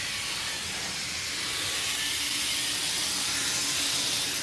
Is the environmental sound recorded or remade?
recorded